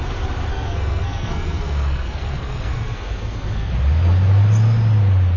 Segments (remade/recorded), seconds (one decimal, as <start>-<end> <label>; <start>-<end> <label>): 0.0-0.5 recorded; 0.5-3.7 remade; 3.7-5.4 recorded